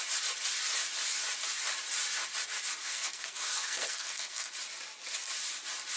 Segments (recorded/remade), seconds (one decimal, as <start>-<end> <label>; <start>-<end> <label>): 0.0-2.8 recorded; 2.8-4.5 remade; 4.5-6.0 recorded